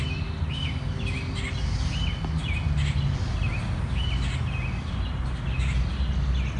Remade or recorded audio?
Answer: recorded